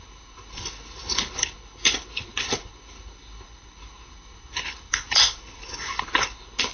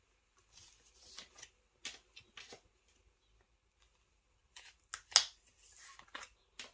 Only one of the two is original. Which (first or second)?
second